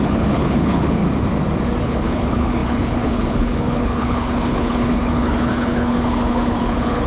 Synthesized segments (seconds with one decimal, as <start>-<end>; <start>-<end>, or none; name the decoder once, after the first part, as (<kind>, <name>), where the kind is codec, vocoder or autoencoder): 0.0-1.0 (codec, HILCodec); 1.8-7.1